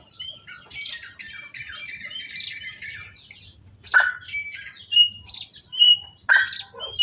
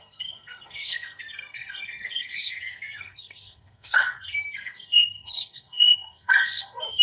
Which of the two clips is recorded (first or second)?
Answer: first